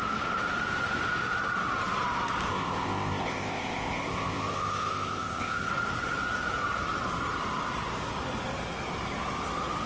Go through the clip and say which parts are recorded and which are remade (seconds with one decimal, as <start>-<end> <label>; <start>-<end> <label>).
0.0-2.5 recorded; 2.5-5.7 remade; 5.7-9.9 recorded